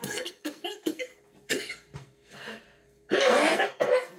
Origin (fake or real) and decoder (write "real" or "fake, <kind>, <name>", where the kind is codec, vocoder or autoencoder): fake, codec, SNAC